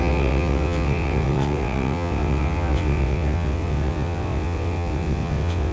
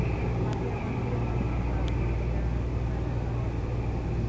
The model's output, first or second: first